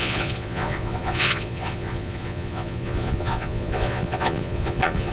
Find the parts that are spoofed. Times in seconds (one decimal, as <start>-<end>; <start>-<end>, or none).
0.0-5.1